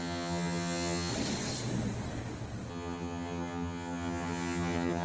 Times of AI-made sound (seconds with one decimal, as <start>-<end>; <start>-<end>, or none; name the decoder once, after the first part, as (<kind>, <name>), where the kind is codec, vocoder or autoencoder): 0.0-1.1 (vocoder, HiFi-GAN); 2.7-5.0